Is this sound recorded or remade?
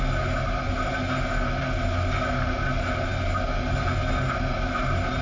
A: recorded